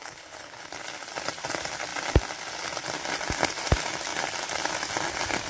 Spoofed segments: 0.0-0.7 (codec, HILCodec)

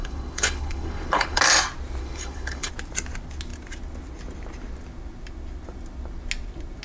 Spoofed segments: 0.0-1.4 (codec, HILCodec); 2.0-2.7

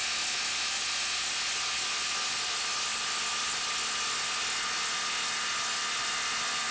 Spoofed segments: none

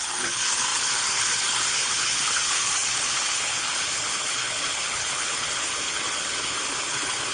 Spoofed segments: 0.0-7.3 (codec, HILCodec)

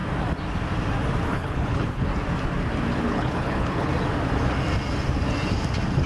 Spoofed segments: 1.3-2.1 (codec, HILCodec); 3.0-3.9

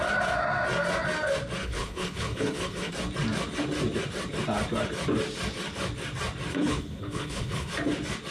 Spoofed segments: 1.6-2.9 (codec, HILCodec); 6.5-7.7